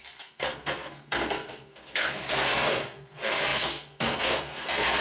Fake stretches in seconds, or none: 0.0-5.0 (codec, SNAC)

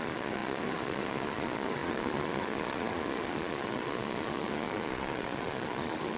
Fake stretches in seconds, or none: 0.0-6.2 (vocoder, Vocos)

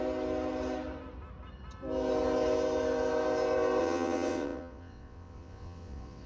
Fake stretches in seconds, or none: 3.8-6.3 (vocoder, WaveNeXt)

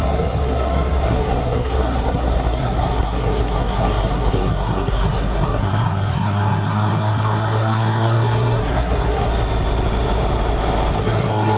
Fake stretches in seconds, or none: 0.0-9.3 (codec, SNAC); 11.0-11.6

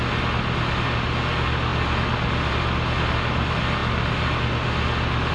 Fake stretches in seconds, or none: none

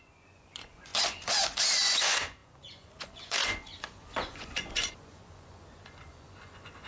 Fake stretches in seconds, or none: 0.0-6.9 (vocoder, Vocos)

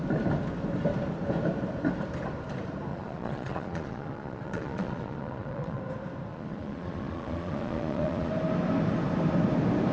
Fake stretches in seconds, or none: 2.9-5.8 (vocoder, Vocos); 6.3-8.3